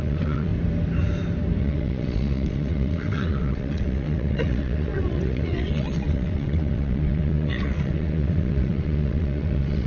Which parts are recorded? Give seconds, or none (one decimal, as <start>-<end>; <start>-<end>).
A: 0.5-1.6